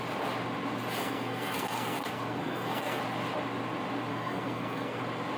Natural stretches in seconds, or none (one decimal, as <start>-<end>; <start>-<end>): 0.0-1.0; 3.0-4.1; 5.0-5.4